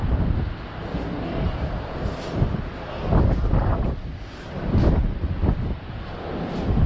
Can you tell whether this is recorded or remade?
recorded